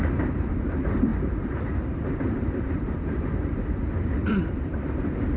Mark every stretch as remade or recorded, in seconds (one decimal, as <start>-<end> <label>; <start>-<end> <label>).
0.0-5.4 remade